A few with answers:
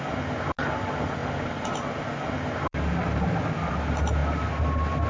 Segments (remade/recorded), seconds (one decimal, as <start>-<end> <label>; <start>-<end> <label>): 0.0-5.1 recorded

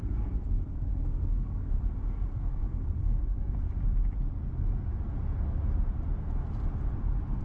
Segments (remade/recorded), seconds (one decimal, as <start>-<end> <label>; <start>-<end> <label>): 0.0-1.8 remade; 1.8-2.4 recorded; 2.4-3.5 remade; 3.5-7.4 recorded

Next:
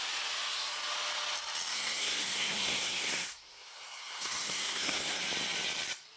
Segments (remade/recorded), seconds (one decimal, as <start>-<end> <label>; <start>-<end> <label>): 0.0-1.7 recorded; 1.7-5.2 remade; 5.2-6.2 recorded